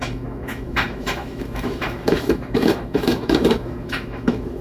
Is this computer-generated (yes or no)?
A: yes